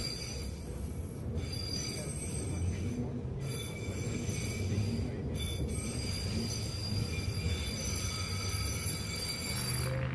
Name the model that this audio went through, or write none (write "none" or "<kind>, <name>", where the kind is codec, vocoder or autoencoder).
none